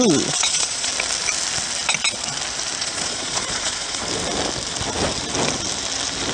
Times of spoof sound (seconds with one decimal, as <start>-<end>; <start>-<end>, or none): 0.4-0.9; 2.8-4.0